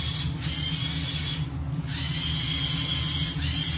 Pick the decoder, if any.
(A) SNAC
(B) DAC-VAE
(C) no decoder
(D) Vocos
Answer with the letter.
C